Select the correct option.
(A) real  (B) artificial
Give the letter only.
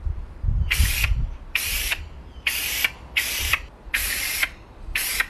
B